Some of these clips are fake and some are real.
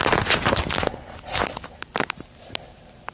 real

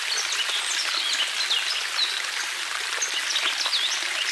real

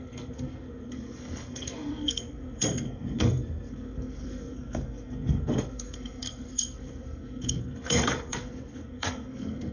fake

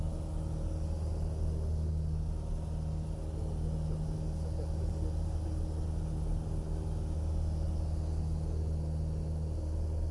real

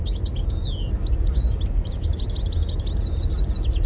real